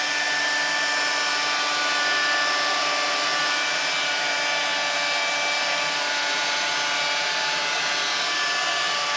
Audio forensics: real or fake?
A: real